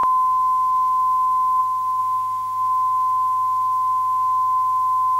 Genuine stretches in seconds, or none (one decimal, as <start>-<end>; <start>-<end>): 1.6-2.0